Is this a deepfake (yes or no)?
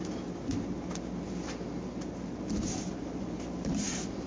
no